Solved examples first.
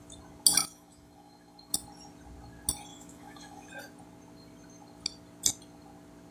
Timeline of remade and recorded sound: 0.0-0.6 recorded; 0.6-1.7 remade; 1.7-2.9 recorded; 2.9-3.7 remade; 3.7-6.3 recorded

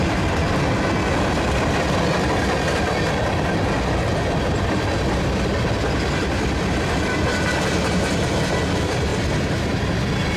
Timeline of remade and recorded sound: 0.0-10.4 recorded

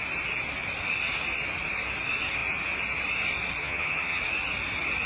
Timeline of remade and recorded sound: 0.0-3.6 recorded; 3.6-4.2 remade; 4.2-5.1 recorded

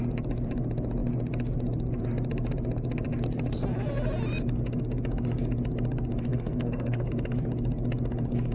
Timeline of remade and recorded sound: 0.0-6.3 recorded; 6.3-7.1 remade; 7.1-8.5 recorded

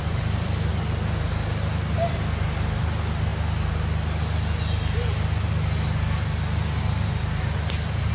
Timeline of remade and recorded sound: 0.0-0.7 remade; 0.7-1.9 recorded; 1.9-3.3 remade; 3.3-8.1 recorded

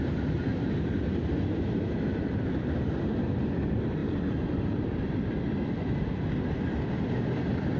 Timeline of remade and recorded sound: 0.0-4.0 recorded; 4.0-5.3 remade; 5.3-7.8 recorded